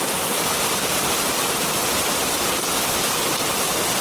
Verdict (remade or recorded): recorded